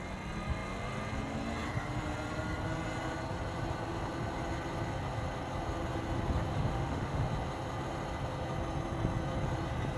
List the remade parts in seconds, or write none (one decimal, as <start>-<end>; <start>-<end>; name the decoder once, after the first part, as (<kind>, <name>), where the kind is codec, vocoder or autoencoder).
6.5-7.3 (autoencoder, DAC-VAE)